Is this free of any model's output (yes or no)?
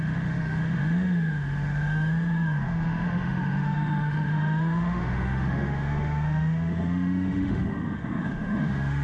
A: no